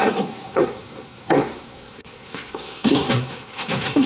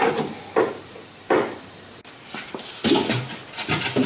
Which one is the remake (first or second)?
first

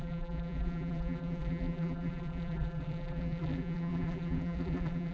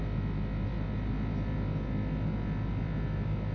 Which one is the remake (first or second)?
first